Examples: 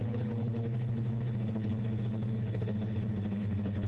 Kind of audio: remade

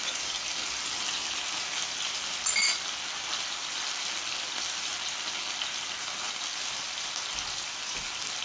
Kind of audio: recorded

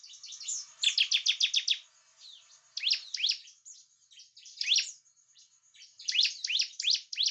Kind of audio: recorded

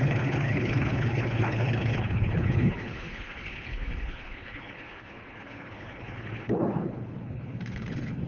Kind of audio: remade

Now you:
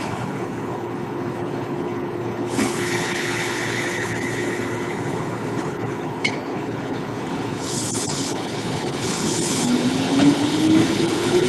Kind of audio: remade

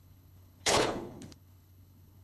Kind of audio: remade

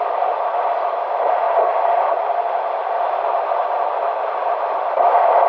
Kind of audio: recorded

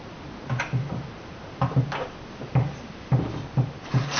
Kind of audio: recorded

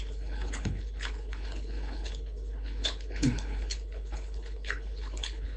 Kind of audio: remade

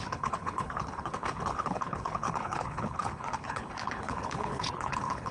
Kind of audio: remade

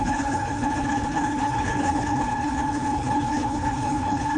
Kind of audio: remade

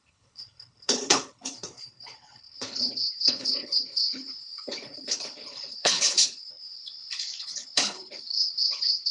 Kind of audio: remade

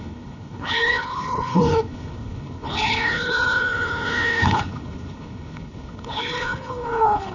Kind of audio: remade